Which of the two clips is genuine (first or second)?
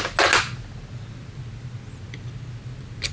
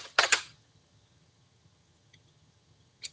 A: first